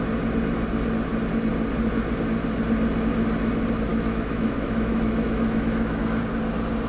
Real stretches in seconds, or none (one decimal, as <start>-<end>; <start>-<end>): 0.0-3.9; 6.2-6.9

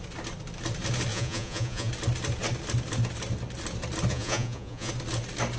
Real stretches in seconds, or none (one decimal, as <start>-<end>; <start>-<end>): 0.0-1.1; 1.9-4.1; 4.9-5.6

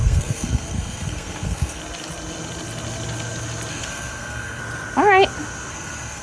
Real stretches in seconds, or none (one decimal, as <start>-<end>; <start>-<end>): 1.8-3.7; 4.6-5.7